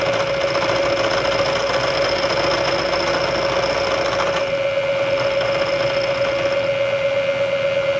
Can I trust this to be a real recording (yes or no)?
yes